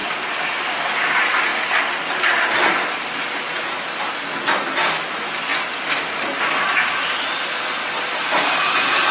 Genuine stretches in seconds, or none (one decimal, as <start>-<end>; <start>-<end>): 0.0-9.1